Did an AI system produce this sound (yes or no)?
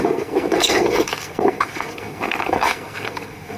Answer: yes